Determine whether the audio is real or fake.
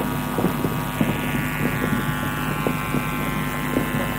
real